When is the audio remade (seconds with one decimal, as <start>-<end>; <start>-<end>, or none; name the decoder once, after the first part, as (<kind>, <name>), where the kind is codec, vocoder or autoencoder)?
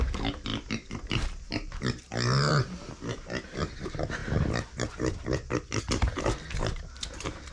none